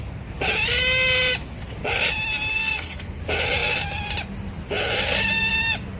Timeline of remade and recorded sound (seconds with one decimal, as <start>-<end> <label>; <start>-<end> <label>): 0.0-2.5 recorded; 2.5-3.2 remade; 3.2-6.0 recorded